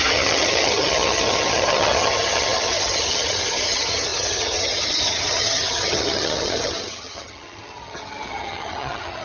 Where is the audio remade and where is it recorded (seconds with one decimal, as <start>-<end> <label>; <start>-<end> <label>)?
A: 0.0-9.2 remade